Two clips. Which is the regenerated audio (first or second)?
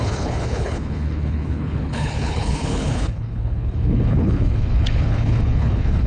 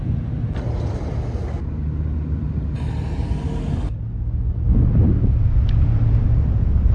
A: first